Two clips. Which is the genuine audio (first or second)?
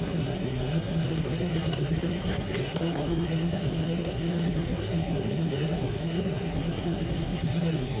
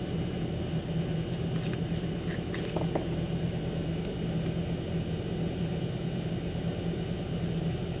second